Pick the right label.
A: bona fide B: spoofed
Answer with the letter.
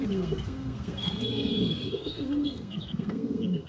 B